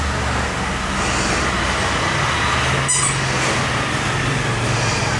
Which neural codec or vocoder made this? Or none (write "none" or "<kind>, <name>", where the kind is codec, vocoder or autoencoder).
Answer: none